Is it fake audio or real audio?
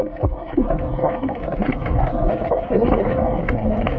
fake